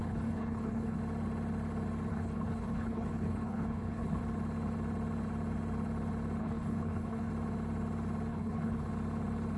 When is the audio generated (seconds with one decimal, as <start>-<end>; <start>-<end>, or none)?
0.0-1.0; 2.1-4.2; 6.4-7.3; 8.3-8.9